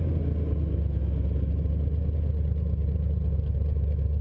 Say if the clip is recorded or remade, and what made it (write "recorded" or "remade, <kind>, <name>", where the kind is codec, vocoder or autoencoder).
recorded